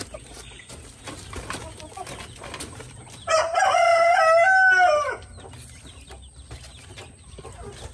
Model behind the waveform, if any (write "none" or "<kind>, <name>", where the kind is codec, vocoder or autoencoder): none